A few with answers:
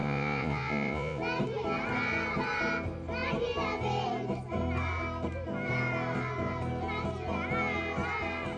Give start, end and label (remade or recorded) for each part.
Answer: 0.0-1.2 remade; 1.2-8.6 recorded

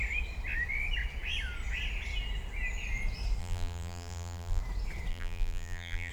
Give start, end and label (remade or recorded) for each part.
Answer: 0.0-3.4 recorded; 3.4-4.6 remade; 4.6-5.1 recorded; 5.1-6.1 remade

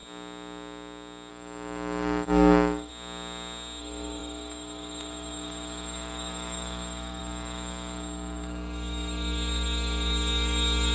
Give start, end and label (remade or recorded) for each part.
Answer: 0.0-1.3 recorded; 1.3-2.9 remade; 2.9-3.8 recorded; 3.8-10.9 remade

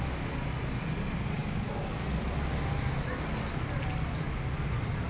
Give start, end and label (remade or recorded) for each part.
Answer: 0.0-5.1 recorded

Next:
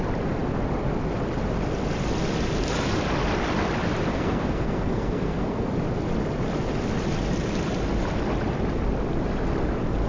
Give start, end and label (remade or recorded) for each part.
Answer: 0.0-4.1 recorded; 4.1-5.7 remade; 5.7-10.1 recorded

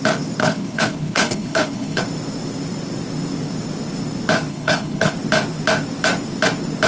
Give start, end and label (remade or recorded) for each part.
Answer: 0.0-0.4 recorded; 0.4-2.0 remade; 2.0-4.5 recorded; 4.5-5.1 remade; 5.1-6.9 recorded

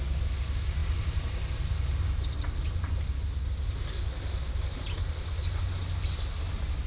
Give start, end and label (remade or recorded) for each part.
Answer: 0.0-0.8 recorded; 0.8-1.7 remade; 1.7-6.9 recorded

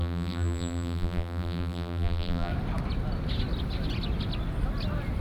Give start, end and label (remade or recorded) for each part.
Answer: 0.0-2.5 remade; 2.5-5.2 recorded